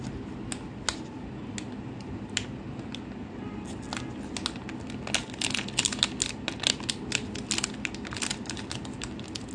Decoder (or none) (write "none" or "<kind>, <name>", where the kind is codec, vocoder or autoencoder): none